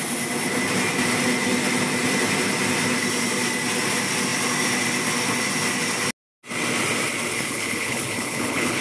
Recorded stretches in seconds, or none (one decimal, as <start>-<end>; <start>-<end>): 0.0-7.3